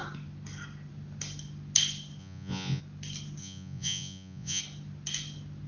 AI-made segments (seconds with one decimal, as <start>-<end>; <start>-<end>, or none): 2.2-2.8; 3.4-4.6

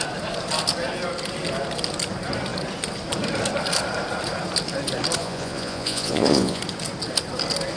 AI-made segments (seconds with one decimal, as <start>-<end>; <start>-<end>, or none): 5.2-6.6

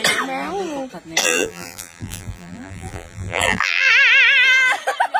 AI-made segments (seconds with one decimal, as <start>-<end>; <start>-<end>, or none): 1.2-3.9

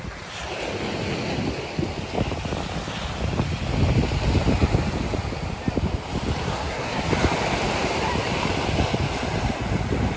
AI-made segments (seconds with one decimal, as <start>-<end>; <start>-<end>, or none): 6.4-7.0

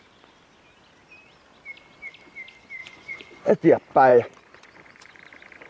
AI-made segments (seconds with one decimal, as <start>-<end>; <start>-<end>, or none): 2.8-3.5; 4.1-5.2

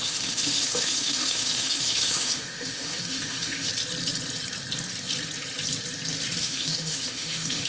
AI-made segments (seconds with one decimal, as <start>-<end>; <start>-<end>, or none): 0.0-3.7; 6.4-7.7